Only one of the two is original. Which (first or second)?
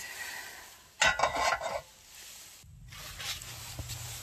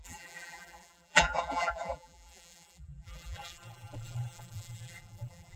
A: first